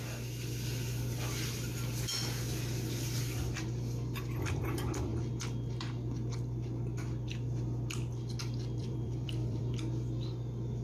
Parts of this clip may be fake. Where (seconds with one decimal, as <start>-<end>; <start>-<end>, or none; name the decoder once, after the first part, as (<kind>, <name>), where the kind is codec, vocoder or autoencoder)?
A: 8.8-9.6 (vocoder, BigVGAN v2)